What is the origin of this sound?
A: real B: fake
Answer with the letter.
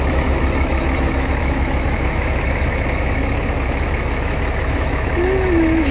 B